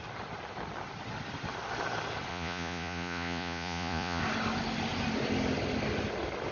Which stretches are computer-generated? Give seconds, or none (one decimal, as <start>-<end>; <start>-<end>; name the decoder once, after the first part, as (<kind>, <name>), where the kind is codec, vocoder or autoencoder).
2.3-4.2 (vocoder, Vocos)